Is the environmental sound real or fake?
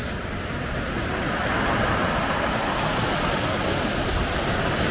real